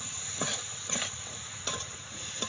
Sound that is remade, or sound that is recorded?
remade